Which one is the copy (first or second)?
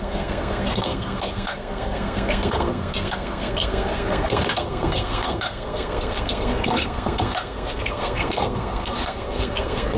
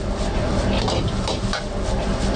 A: first